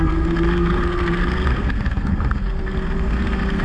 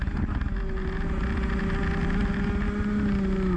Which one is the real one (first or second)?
second